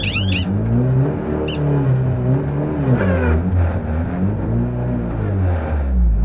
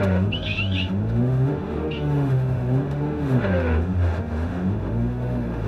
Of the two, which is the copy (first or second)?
second